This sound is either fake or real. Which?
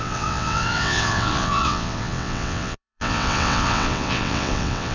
fake